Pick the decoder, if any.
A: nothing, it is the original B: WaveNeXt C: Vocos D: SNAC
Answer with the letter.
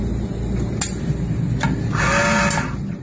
A